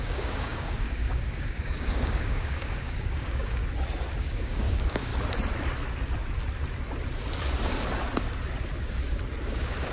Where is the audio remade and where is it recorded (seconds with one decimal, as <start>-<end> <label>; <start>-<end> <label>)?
0.0-3.6 remade; 3.6-4.2 recorded; 4.2-5.1 remade; 5.1-9.4 recorded; 9.4-9.9 remade